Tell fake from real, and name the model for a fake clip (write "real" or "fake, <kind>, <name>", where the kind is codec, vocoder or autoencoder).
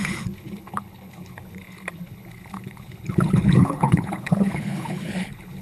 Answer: fake, codec, HILCodec